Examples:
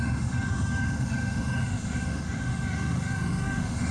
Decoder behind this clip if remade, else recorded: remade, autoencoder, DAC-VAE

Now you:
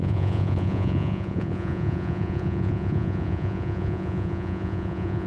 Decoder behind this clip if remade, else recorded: remade, vocoder, Vocos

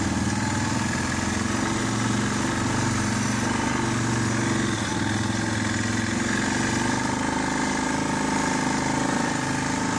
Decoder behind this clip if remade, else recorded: recorded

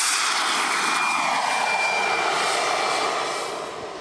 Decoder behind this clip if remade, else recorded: recorded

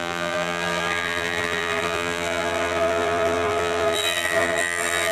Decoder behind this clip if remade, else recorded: remade, vocoder, BigVGAN v2